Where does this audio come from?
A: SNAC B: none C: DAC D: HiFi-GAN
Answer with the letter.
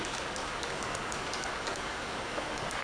C